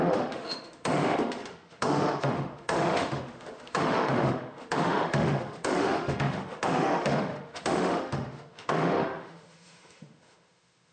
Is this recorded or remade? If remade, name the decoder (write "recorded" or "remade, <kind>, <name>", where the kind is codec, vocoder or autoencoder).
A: remade, autoencoder, DAC-VAE